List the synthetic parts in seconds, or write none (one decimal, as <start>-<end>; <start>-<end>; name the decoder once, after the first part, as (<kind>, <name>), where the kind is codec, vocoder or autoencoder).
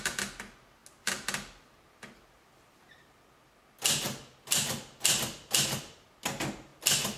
none